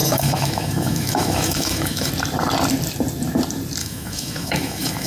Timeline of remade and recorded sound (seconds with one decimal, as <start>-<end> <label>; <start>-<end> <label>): 0.0-2.1 remade; 2.1-3.8 recorded; 3.8-5.1 remade